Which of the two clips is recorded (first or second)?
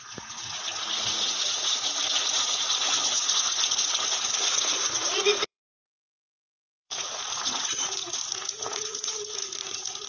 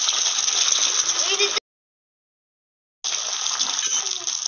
second